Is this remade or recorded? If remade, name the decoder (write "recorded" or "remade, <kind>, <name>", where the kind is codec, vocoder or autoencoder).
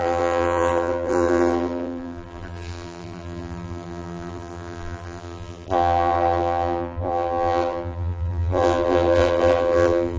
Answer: remade, vocoder, BigVGAN v2